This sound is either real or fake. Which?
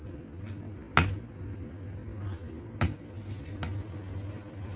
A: real